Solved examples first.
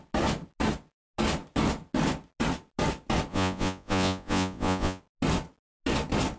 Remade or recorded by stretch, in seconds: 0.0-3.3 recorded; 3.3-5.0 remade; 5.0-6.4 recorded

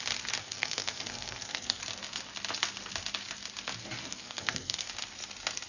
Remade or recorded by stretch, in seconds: 0.0-0.4 recorded; 0.4-1.8 remade; 1.8-4.0 recorded; 4.0-4.9 remade; 4.9-5.7 recorded

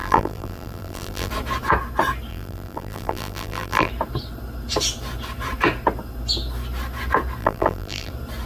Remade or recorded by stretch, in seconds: 0.0-1.3 remade; 1.3-2.3 recorded; 2.3-3.9 remade; 3.9-7.4 recorded; 7.4-8.1 remade; 8.1-8.5 recorded

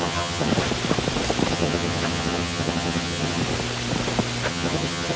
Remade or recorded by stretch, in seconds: 0.0-0.5 remade; 0.5-1.5 recorded; 1.5-3.4 remade; 3.4-4.5 recorded; 4.5-5.2 remade

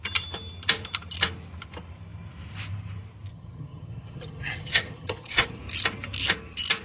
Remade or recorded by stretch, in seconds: 0.0-3.3 recorded; 3.3-5.6 remade; 5.6-6.8 recorded

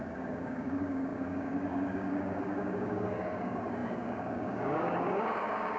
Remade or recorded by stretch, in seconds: 0.0-5.8 remade